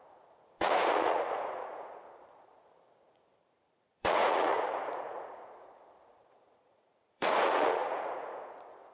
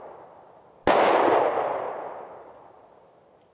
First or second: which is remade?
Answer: first